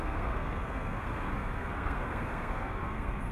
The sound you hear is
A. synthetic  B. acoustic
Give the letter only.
A